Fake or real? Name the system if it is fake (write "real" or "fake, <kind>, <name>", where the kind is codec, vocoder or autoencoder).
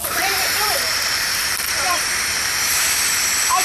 fake, vocoder, BigVGAN v2